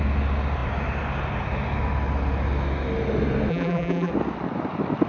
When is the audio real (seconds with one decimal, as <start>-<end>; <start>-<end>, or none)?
0.0-3.5; 4.1-5.1